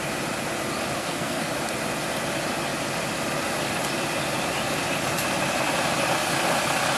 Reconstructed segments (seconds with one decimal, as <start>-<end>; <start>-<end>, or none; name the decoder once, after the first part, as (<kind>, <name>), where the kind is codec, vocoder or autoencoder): 1.0-1.5 (codec, SNAC)